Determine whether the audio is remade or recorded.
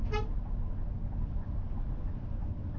recorded